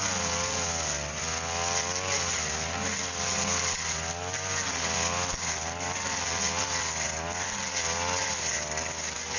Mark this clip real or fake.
real